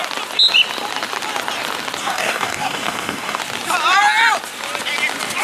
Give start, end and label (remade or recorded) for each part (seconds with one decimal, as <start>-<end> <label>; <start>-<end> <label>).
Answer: 0.0-2.0 recorded; 2.0-3.4 remade; 3.4-5.4 recorded